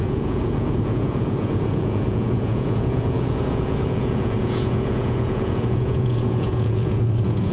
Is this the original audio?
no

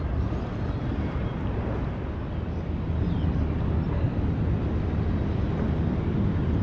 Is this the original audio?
yes